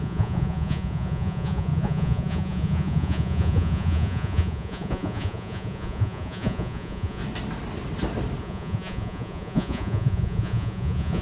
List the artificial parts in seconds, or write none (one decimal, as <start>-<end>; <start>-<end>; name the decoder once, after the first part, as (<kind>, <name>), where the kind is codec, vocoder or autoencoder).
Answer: 0.0-7.2 (vocoder, Vocos); 8.4-11.2